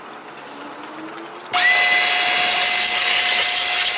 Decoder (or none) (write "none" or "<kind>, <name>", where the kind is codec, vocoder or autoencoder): none